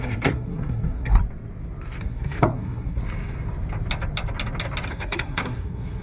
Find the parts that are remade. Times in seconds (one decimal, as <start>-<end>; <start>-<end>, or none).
0.0-1.2; 2.0-3.0; 4.9-6.0